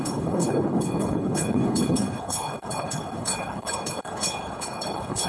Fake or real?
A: fake